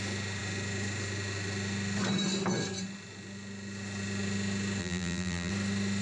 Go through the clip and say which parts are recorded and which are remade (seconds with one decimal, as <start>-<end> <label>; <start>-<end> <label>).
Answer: 0.0-4.8 recorded; 4.8-5.5 remade; 5.5-6.0 recorded